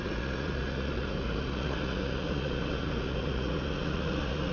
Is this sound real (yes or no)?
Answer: no